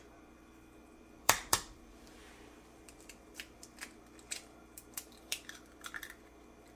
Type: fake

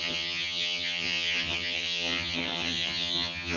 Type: fake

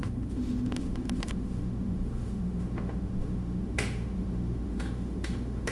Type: fake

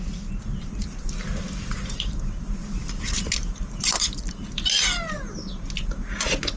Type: real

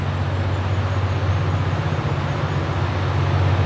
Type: real